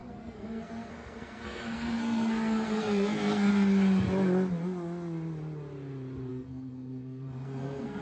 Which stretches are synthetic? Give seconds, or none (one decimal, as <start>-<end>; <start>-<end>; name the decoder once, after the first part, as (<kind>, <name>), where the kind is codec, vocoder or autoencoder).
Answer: 0.0-3.5 (codec, SNAC); 6.3-8.0